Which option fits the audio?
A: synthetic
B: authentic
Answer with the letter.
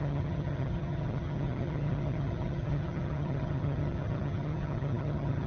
A